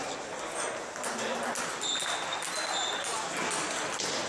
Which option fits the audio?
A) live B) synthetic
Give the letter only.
A